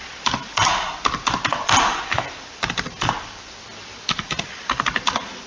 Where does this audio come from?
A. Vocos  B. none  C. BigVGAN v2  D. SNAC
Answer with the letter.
C